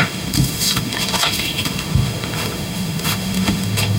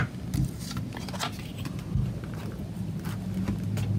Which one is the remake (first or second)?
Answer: first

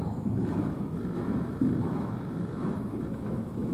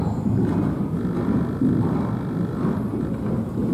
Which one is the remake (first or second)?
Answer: first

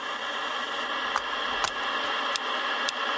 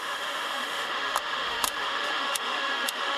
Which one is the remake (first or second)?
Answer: second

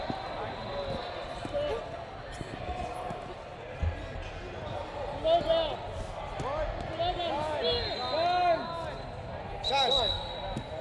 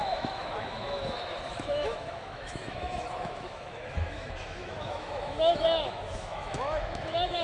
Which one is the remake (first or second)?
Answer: second